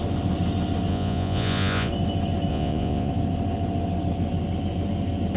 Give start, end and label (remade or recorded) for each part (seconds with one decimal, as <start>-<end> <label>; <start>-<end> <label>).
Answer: 0.0-0.9 recorded; 0.9-1.9 remade; 1.9-2.5 recorded; 2.5-3.1 remade; 3.1-5.4 recorded